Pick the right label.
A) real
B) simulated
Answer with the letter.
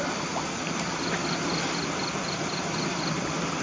A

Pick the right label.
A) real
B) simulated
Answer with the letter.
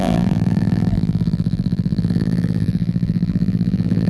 B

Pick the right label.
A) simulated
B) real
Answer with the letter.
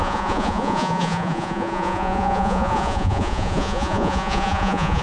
A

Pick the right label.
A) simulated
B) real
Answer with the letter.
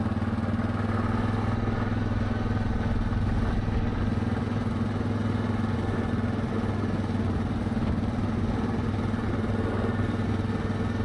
B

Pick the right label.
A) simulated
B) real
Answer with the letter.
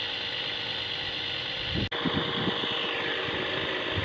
B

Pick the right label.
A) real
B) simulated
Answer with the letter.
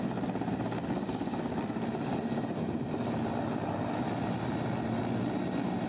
A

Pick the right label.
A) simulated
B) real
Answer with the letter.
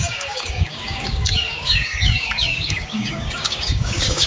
A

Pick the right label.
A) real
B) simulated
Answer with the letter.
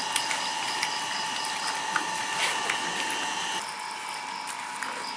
A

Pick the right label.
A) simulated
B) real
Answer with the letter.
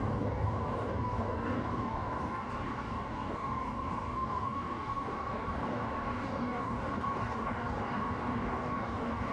A